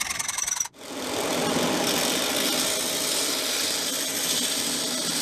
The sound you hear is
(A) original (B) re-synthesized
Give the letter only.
A